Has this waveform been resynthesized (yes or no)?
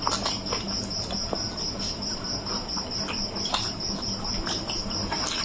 no